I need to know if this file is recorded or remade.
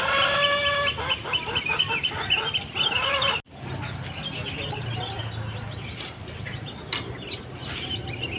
recorded